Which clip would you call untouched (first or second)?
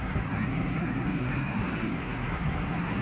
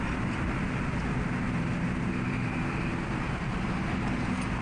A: second